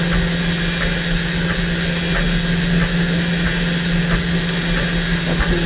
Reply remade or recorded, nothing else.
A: recorded